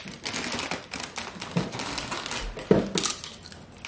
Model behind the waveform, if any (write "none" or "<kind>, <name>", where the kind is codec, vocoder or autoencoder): none